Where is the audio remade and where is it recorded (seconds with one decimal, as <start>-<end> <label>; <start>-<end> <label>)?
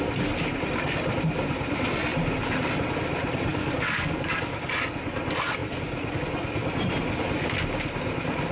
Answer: 0.0-3.5 recorded; 3.5-4.7 remade; 4.7-8.5 recorded